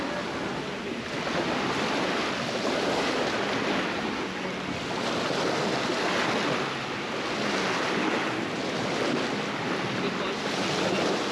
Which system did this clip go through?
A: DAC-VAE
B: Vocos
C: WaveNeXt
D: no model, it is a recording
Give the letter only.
D